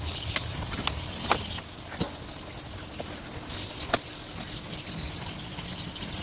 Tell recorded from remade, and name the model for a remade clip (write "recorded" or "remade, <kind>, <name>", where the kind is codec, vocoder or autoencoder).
recorded